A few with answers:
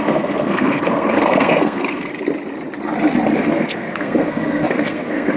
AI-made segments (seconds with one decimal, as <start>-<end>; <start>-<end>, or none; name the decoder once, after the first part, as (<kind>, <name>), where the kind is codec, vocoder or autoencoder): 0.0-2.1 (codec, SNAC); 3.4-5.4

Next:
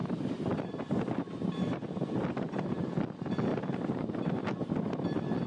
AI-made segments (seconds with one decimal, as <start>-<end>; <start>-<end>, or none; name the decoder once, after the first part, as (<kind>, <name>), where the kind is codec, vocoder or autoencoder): 0.0-2.9 (vocoder, BigVGAN v2); 3.5-4.3

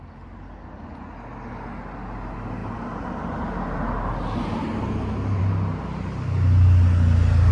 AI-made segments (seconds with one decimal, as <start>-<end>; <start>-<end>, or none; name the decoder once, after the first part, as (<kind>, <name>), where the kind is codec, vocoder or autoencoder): none